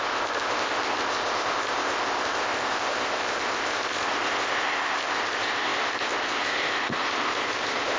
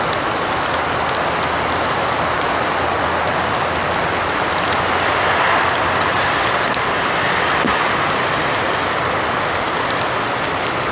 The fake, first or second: first